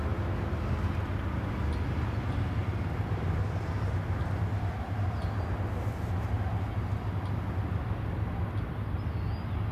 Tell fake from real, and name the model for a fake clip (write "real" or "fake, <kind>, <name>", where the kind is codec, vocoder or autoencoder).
real